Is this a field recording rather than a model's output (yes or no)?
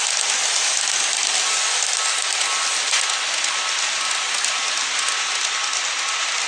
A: yes